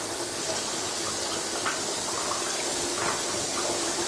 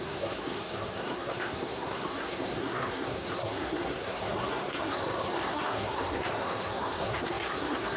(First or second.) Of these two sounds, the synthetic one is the second